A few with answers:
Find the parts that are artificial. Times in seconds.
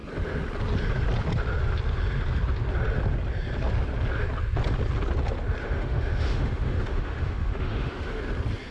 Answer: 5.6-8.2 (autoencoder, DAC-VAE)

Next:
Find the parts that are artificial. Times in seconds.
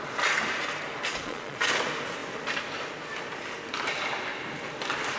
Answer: 1.1-1.7 (vocoder, Vocos)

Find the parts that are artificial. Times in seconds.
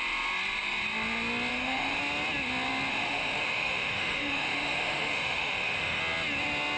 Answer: 1.5-2.0 (autoencoder, DAC-VAE); 2.9-6.0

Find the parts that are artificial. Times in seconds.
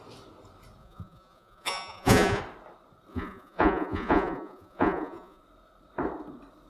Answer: 0.8-2.4 (vocoder, Vocos); 3.1-5.4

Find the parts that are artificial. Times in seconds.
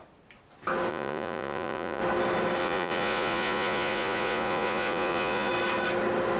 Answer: 0.9-2.0 (vocoder, Vocos); 2.6-5.5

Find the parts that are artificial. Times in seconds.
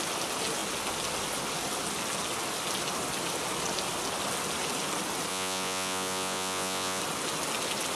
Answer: 5.3-7.0 (vocoder, Vocos)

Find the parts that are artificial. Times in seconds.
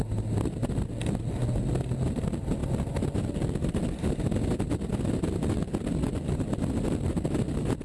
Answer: none